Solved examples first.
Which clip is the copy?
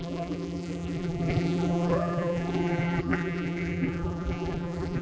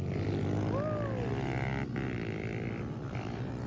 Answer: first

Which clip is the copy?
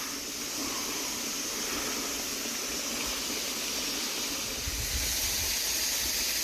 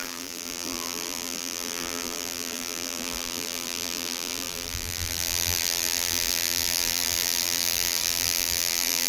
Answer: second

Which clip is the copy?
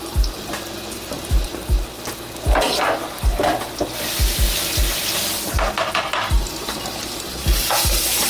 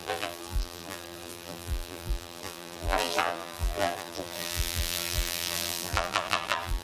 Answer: second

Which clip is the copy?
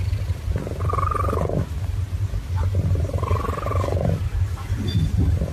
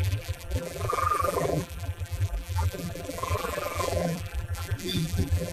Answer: second